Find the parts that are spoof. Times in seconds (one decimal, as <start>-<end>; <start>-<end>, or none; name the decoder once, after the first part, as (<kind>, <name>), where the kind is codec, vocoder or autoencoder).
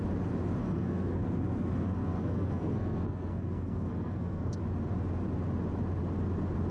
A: 0.6-4.6 (codec, SNAC)